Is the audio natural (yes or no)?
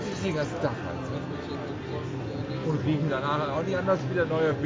yes